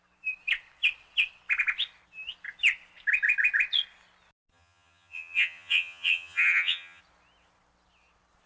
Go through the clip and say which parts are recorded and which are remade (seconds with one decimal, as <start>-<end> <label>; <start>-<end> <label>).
0.0-4.5 recorded; 4.5-7.0 remade; 7.0-8.5 recorded